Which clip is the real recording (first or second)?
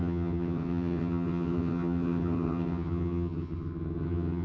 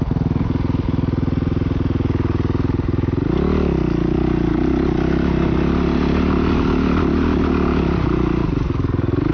second